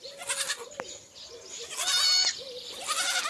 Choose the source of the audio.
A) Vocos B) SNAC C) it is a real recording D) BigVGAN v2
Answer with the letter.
C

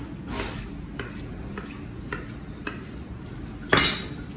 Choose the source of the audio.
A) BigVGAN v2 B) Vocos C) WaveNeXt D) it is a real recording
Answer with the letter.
D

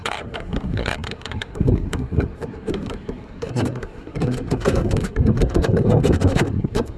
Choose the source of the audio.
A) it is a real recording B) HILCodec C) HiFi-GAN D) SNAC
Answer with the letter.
D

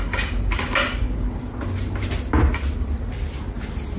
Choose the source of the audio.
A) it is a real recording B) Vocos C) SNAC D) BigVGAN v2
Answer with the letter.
A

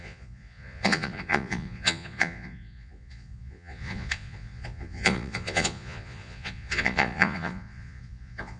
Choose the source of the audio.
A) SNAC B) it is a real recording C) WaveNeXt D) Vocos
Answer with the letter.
D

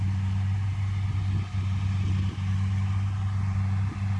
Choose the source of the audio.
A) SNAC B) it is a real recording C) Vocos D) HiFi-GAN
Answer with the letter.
B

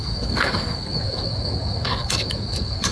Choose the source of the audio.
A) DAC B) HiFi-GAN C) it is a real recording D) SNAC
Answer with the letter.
A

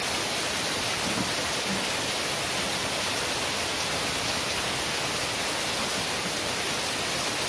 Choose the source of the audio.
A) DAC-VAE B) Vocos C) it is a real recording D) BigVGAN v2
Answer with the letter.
C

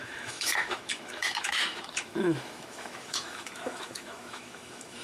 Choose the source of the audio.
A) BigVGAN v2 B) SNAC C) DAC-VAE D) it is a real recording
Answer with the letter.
C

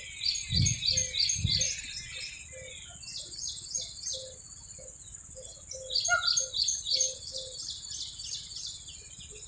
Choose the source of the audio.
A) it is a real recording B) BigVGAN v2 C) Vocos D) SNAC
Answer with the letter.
A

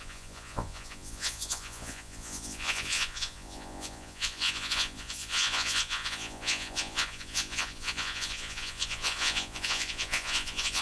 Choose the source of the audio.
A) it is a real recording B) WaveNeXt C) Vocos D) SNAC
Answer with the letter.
C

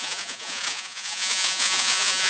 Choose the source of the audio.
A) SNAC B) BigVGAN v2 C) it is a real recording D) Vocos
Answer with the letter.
D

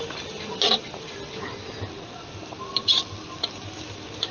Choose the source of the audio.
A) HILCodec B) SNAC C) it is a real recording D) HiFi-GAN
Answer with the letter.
C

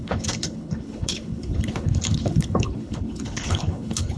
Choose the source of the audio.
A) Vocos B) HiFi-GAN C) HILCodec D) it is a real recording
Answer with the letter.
C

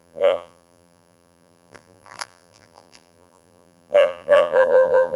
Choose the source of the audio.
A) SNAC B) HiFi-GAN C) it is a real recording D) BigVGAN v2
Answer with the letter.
D